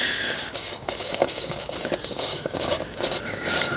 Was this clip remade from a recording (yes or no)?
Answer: yes